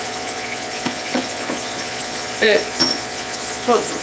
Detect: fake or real fake